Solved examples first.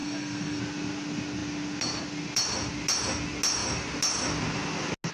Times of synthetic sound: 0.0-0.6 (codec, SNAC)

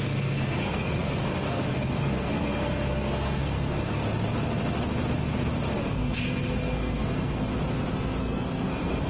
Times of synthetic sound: 0.0-4.0 (codec, SNAC); 5.8-7.5; 8.2-9.1

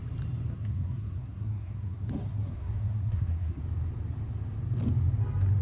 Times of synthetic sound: 0.5-3.6 (codec, SNAC)

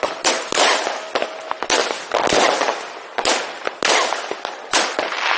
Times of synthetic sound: none

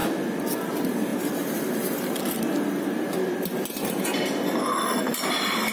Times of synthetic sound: none